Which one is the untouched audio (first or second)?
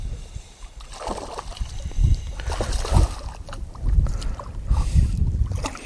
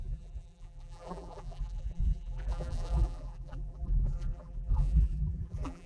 first